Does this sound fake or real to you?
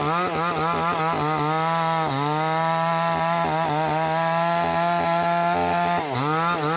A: real